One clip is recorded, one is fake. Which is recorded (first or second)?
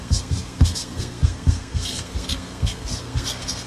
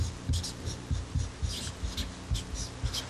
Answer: second